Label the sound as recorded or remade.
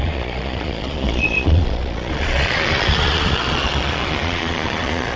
remade